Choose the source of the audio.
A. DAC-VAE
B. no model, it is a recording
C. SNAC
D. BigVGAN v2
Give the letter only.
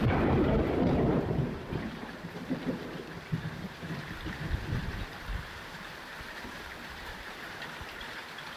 D